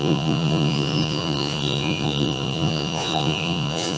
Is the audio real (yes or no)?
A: no